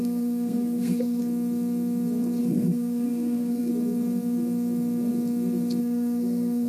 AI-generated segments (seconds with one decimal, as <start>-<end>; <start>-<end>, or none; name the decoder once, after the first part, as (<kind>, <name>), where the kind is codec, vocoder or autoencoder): 0.0-1.2 (codec, SNAC); 2.4-3.7; 5.8-6.7